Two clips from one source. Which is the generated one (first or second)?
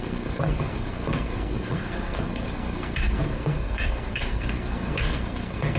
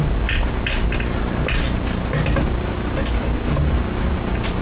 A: first